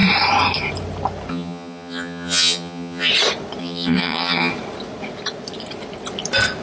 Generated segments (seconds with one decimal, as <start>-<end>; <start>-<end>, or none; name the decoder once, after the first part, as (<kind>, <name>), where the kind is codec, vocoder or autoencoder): 1.3-3.1 (vocoder, HiFi-GAN); 3.6-4.5